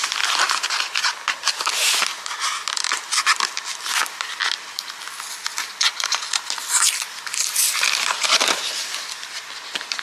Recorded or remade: recorded